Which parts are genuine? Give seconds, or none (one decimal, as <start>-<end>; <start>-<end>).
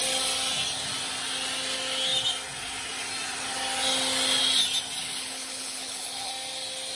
0.0-5.0; 6.3-7.0